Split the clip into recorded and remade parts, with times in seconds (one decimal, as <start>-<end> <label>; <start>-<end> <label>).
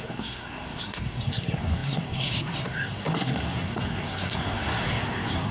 0.0-5.5 remade